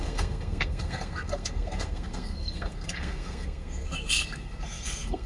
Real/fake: fake